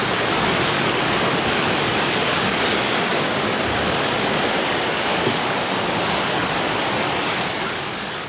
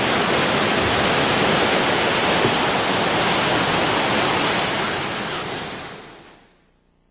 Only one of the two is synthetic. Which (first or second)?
first